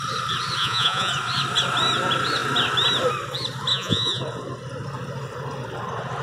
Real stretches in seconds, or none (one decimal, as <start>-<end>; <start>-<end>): 0.0-0.6; 1.1-3.7; 4.2-6.2